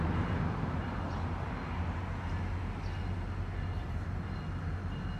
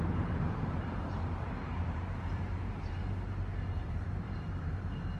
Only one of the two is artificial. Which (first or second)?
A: second